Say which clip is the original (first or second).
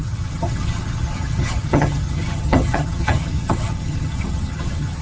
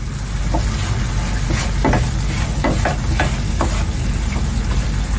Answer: second